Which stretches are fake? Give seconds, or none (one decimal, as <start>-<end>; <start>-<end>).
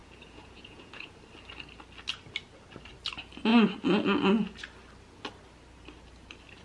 0.0-1.1